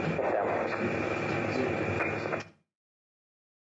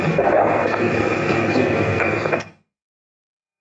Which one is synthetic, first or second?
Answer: second